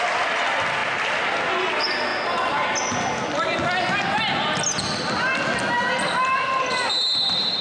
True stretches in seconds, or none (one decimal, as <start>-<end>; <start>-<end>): 0.0-7.6